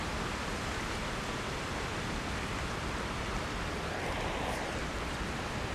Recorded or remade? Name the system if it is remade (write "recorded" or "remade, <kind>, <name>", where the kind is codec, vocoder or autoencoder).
remade, vocoder, BigVGAN v2